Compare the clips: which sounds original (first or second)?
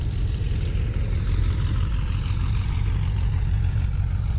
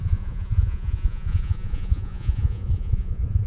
first